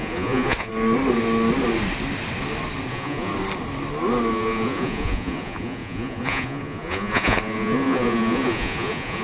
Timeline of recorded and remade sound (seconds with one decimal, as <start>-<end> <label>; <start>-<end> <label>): 0.0-0.7 remade; 0.7-2.9 recorded; 2.9-3.3 remade; 3.3-4.3 recorded; 4.3-9.2 remade